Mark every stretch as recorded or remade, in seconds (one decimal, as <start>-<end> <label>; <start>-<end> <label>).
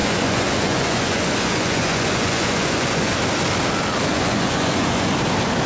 0.0-3.1 remade; 3.1-4.1 recorded; 4.1-5.1 remade; 5.1-5.7 recorded